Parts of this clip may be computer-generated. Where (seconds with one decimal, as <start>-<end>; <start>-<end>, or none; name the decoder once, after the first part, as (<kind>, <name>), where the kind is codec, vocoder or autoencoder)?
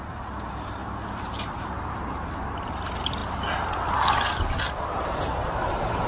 0.0-3.2 (vocoder, BigVGAN v2); 4.7-6.1